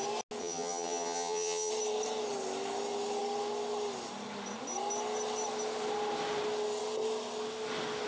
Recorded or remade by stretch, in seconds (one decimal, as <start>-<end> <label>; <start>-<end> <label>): 0.0-0.4 recorded; 0.4-1.7 remade; 1.7-8.1 recorded